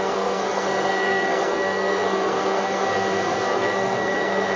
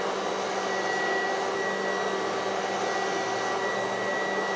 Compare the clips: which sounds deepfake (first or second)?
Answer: first